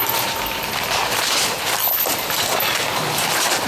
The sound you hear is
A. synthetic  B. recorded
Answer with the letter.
A